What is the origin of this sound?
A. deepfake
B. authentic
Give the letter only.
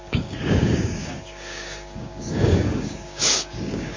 A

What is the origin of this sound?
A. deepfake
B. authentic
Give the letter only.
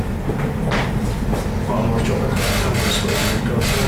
B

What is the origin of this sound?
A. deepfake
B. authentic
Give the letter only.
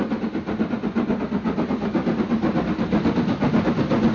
B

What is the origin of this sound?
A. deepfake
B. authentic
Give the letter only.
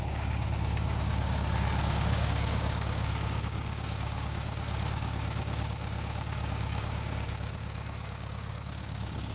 A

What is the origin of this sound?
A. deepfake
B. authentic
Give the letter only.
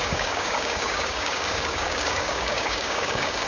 A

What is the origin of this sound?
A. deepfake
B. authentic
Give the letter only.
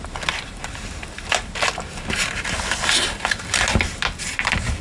B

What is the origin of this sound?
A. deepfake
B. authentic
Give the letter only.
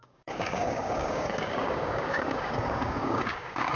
A